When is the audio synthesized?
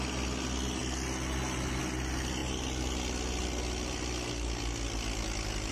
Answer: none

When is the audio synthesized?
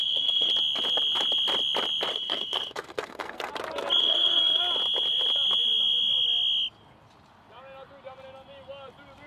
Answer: 0.0-0.5 (codec, SNAC); 2.1-3.5; 4.0-4.6